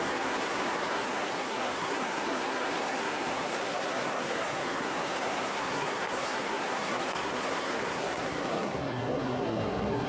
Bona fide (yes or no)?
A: no